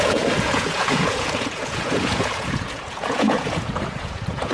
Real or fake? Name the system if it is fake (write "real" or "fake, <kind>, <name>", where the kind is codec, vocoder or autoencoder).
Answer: fake, vocoder, Vocos